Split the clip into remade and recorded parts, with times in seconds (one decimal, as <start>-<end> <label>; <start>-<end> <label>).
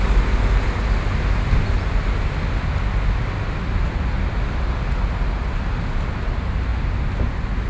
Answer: 0.0-7.7 recorded